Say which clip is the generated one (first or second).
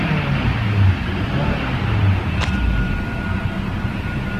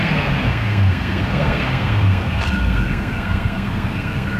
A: second